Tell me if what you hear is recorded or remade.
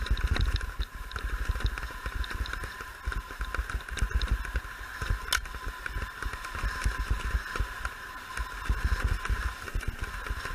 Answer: recorded